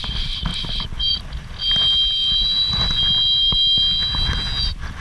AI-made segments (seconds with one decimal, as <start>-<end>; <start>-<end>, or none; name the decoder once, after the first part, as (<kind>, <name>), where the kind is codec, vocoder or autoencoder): none